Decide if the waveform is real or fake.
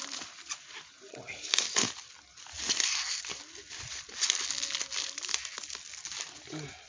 real